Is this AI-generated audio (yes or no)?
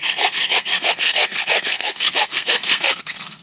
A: yes